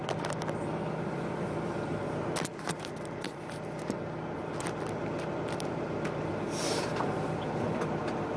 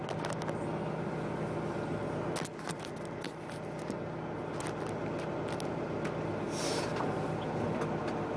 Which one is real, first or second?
second